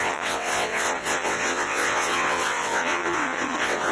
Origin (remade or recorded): remade